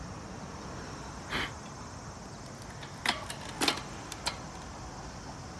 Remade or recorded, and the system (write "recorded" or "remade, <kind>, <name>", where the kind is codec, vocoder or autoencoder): recorded